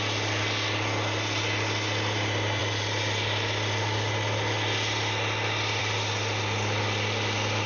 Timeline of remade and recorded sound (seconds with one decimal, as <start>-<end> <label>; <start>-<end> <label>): 0.0-7.7 recorded